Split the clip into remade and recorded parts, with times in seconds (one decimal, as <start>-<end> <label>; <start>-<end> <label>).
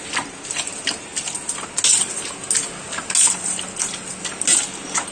0.0-5.1 recorded